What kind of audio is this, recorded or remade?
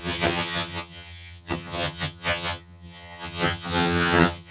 remade